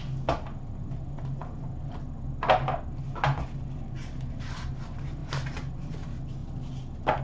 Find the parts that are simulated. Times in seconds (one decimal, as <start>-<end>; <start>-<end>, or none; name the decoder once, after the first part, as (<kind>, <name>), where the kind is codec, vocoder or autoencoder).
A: none